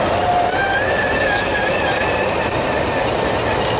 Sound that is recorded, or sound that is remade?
recorded